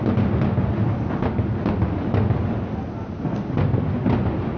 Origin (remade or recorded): recorded